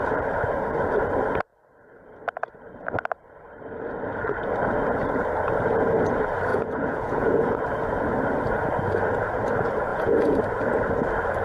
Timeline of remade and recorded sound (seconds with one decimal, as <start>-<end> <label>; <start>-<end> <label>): 0.0-6.5 recorded; 6.5-7.6 remade; 7.6-9.9 recorded; 9.9-10.4 remade; 10.4-11.4 recorded